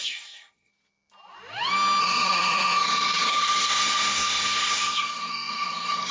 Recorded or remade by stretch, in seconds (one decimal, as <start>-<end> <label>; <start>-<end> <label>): 0.0-0.7 remade; 0.7-2.0 recorded; 2.0-6.1 remade

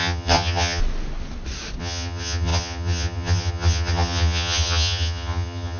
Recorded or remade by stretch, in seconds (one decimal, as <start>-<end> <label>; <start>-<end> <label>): 0.0-0.8 remade; 0.8-1.8 recorded; 1.8-5.8 remade

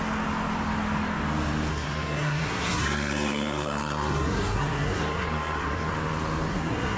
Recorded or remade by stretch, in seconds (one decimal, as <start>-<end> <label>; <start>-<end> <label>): 0.0-1.7 recorded; 1.7-5.9 remade; 5.9-6.5 recorded; 6.5-7.0 remade

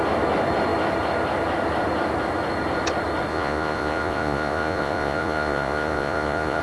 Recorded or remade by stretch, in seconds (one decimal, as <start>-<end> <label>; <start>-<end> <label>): 0.0-3.3 recorded; 3.3-6.6 remade

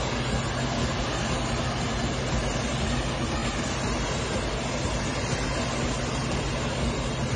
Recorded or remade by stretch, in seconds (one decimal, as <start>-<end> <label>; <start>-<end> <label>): 0.0-7.4 recorded

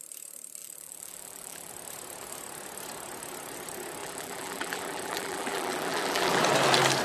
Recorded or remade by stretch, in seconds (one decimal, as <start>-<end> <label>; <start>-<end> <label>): 0.0-0.6 recorded; 0.6-1.7 remade; 1.7-4.0 recorded; 4.0-6.4 remade; 6.4-7.0 recorded